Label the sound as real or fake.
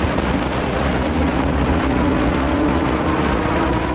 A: fake